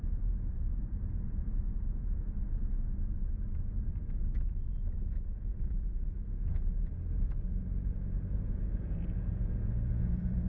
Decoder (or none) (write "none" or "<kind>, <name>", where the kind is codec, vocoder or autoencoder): vocoder, Vocos